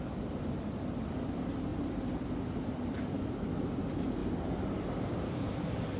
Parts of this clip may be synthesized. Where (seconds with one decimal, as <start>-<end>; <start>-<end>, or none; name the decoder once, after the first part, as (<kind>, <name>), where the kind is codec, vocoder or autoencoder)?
none